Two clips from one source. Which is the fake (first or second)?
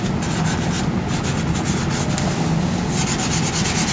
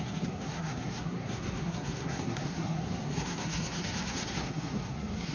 second